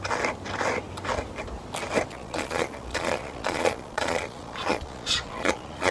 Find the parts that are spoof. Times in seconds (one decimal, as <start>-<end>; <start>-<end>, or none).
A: 2.1-5.9